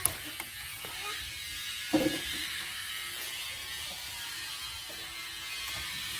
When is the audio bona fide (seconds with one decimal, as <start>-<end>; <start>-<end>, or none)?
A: 0.0-2.4; 2.9-6.2